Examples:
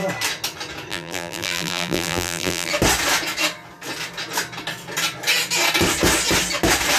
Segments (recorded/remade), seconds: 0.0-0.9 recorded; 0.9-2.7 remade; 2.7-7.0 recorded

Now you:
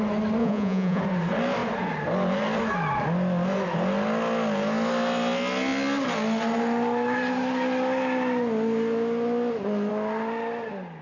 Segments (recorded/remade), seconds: 0.0-0.4 recorded; 0.4-1.0 remade; 1.0-11.0 recorded